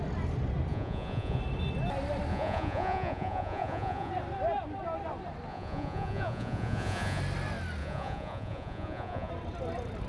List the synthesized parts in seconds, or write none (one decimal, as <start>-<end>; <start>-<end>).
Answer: 0.7-1.4; 2.3-4.1; 5.5-7.2; 7.8-9.3